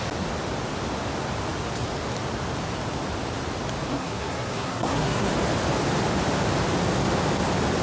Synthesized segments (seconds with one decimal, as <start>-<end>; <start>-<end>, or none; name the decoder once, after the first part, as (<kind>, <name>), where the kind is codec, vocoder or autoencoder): 3.9-5.3 (codec, SNAC)